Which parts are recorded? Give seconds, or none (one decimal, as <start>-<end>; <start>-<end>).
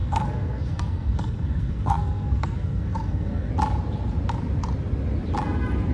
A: 3.5-5.9